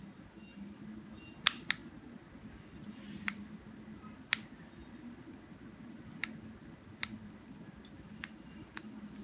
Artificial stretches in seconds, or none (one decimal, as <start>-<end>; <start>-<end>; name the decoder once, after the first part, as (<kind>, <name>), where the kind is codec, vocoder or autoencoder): none

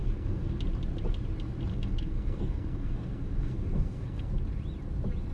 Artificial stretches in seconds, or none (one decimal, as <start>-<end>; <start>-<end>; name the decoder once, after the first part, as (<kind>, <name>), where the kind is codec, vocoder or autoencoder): 0.0-0.6 (codec, SNAC); 1.7-4.3

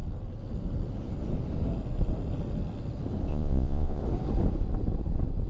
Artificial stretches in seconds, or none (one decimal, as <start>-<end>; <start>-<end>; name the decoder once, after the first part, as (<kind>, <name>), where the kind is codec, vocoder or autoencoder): 3.3-4.0 (vocoder, Vocos)

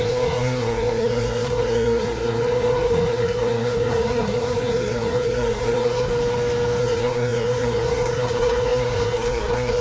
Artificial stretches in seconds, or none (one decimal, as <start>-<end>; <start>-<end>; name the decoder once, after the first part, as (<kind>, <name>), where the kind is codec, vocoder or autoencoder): 0.0-6.1 (codec, SNAC); 6.8-9.8

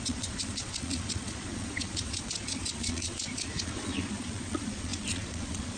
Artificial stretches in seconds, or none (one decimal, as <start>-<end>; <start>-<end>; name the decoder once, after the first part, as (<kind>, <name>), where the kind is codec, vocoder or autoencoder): 0.0-5.8 (vocoder, Vocos)

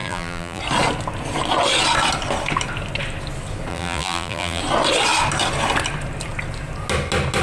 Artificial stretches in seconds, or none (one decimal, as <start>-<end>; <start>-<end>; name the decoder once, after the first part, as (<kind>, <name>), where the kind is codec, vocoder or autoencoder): 0.0-0.6 (vocoder, BigVGAN v2); 3.7-4.6

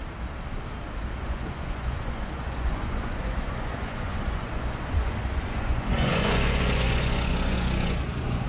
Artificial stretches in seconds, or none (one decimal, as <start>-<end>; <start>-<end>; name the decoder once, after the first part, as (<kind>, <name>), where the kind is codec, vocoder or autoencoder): 1.2-8.5 (vocoder, Vocos)

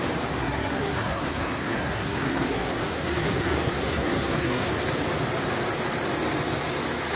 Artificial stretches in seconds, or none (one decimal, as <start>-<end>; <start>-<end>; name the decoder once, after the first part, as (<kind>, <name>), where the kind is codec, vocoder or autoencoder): 0.4-4.7 (codec, SNAC)